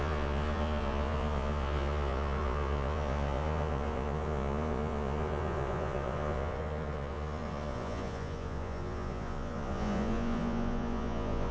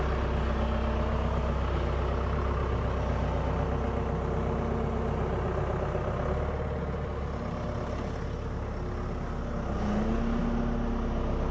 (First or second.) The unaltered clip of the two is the second